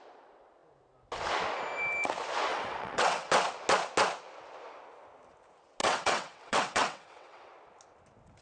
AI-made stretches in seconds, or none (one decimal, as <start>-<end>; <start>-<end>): 2.5-3.3; 5.8-7.5